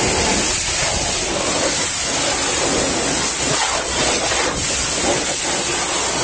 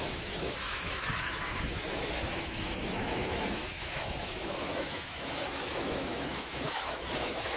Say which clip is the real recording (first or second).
first